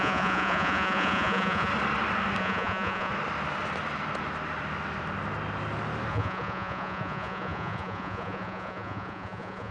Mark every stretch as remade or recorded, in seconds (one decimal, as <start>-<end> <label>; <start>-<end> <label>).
0.0-1.7 remade; 1.7-2.4 recorded; 2.4-3.1 remade; 3.1-6.1 recorded; 6.1-9.7 remade